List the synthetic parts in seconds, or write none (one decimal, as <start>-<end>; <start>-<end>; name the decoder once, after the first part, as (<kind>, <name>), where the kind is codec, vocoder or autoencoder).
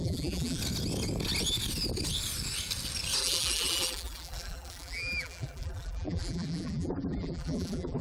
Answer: 0.0-0.6 (vocoder, BigVGAN v2); 3.2-8.0